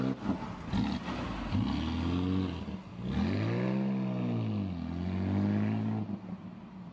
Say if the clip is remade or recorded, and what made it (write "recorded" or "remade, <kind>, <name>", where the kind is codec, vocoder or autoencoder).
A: recorded